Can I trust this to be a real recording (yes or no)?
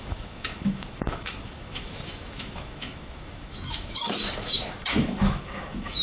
no